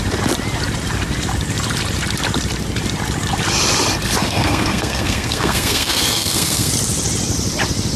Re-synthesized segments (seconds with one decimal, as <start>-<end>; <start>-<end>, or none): 4.2-6.7